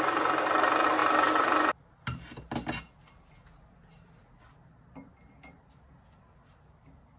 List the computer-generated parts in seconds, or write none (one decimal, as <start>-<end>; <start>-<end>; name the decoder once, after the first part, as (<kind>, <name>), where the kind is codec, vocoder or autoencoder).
none